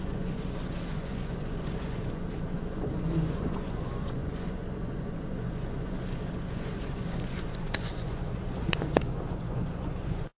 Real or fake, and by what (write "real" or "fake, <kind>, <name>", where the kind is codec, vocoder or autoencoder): fake, vocoder, Vocos